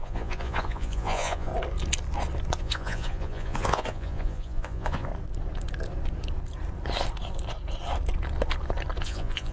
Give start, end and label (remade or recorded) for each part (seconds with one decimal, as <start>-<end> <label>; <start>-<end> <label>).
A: 0.0-1.5 remade; 1.5-2.6 recorded; 2.6-5.1 remade; 5.1-9.0 recorded; 9.0-9.5 remade